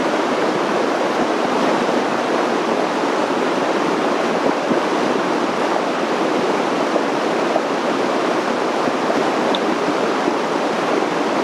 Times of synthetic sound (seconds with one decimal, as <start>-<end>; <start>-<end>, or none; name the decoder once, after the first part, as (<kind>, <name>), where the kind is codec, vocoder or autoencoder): none